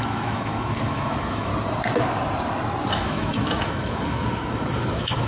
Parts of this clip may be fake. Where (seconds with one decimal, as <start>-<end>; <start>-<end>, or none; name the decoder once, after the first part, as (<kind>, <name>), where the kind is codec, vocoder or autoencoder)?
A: 0.0-1.5 (autoencoder, DAC-VAE); 2.9-5.3